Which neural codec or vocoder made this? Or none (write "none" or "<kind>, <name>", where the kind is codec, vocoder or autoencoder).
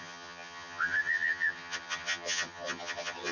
vocoder, HiFi-GAN